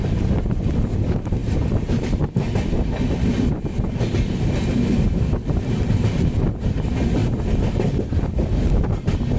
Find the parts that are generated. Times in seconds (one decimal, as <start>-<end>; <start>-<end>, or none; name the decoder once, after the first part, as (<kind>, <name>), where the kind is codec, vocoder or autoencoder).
none